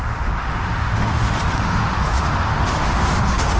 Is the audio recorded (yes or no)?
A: no